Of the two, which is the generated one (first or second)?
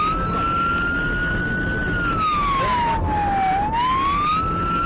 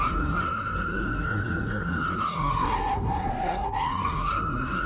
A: second